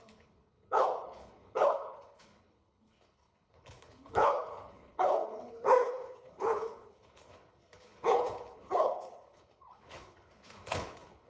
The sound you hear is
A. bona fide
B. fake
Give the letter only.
B